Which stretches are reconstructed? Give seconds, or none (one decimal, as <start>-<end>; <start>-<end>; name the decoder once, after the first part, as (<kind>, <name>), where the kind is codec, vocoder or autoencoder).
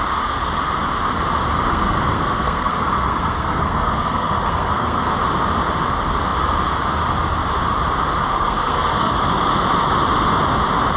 1.7-5.1 (codec, SNAC); 8.3-9.1